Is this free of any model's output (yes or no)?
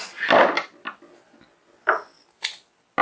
yes